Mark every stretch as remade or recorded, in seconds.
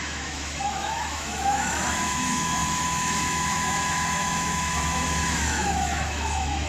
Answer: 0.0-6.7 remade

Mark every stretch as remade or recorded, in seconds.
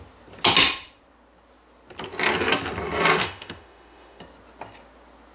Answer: 0.0-3.2 recorded; 3.2-4.2 remade; 4.2-5.3 recorded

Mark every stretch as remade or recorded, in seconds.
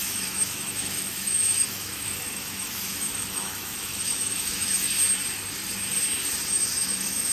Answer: 0.0-4.9 remade; 4.9-6.5 recorded; 6.5-7.3 remade